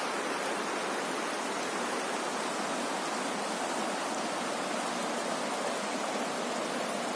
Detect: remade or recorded recorded